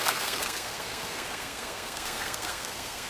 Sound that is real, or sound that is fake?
fake